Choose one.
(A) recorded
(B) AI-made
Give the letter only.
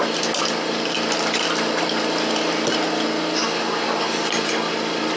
A